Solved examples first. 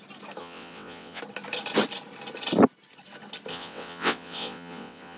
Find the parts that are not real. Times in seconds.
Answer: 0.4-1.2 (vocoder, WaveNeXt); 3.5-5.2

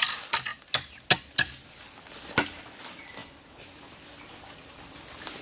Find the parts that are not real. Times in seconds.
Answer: none

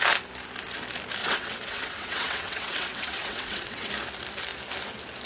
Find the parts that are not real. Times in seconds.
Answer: 1.2-3.9 (vocoder, WaveNeXt)

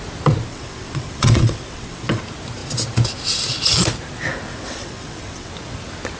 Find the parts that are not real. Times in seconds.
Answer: 0.5-2.2 (vocoder, WaveNeXt); 4.5-5.5

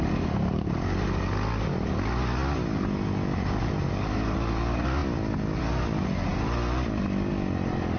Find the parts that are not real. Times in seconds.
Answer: none

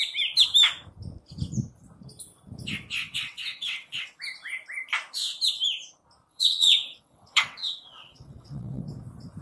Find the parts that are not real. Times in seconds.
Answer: 3.0-4.2 (vocoder, WaveNeXt); 6.3-8.8